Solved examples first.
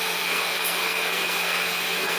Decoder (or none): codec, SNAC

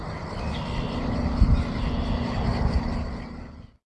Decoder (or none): none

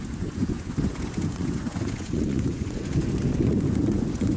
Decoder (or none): vocoder, Vocos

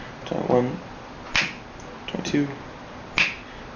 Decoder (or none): none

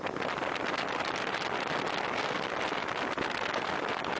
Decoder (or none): none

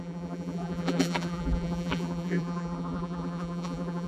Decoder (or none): vocoder, BigVGAN v2